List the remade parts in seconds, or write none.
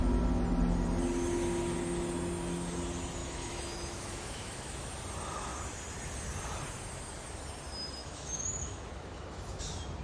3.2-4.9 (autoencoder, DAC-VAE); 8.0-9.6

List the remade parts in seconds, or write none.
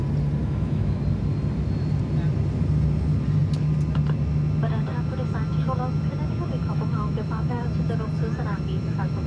0.4-1.0 (autoencoder, DAC-VAE); 6.6-7.6; 8.5-9.3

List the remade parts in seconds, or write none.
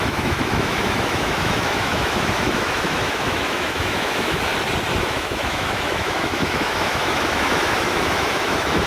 0.0-4.5 (autoencoder, DAC-VAE); 5.0-8.9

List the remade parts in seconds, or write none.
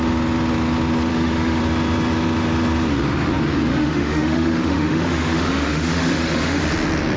1.1-1.6 (autoencoder, DAC-VAE); 3.7-6.6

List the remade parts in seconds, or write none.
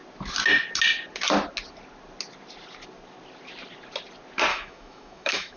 4.5-5.6 (autoencoder, DAC-VAE)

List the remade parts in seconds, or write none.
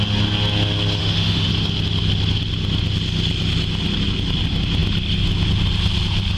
1.0-1.5 (autoencoder, DAC-VAE)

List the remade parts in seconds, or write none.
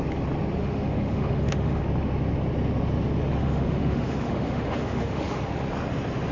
0.6-1.8 (autoencoder, DAC-VAE); 3.4-5.4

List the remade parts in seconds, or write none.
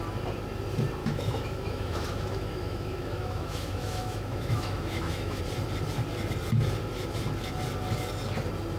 1.0-5.4 (autoencoder, DAC-VAE)